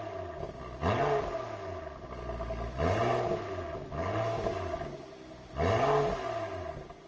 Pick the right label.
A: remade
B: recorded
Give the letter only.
B